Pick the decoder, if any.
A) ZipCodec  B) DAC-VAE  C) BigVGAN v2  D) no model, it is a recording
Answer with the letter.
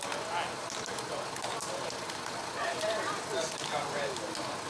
D